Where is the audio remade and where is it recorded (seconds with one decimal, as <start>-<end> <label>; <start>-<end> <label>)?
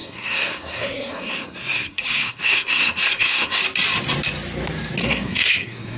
0.0-3.6 remade; 3.6-5.0 recorded; 5.0-6.0 remade